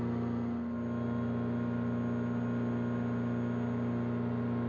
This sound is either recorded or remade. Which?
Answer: recorded